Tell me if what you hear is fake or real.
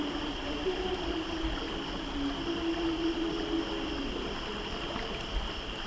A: real